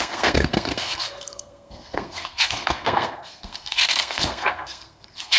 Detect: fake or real fake